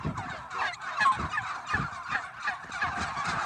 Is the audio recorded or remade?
recorded